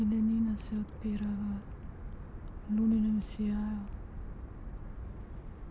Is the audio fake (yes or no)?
no